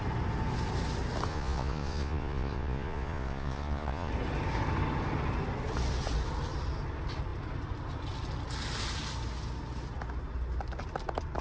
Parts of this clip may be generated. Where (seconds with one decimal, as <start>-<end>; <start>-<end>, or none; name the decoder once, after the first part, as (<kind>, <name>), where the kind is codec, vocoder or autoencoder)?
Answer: 1.3-4.1 (vocoder, Vocos)